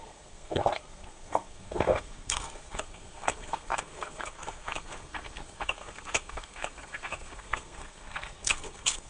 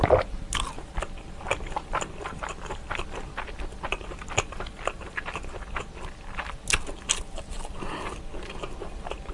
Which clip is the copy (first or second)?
first